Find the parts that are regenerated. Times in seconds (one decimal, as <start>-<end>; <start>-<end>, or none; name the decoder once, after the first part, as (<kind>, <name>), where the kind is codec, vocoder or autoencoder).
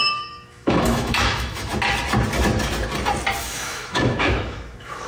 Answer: 0.0-1.7 (autoencoder, DAC-VAE); 3.4-5.1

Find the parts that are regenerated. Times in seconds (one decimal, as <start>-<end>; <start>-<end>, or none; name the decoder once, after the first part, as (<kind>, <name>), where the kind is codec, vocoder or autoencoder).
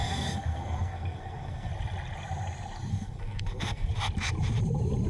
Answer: 0.0-1.7 (codec, SNAC); 2.9-3.9